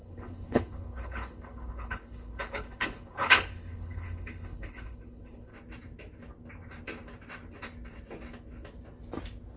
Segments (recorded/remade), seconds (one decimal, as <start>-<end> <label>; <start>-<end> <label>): 0.0-5.5 remade; 5.5-9.6 recorded